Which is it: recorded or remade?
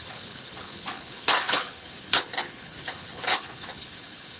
remade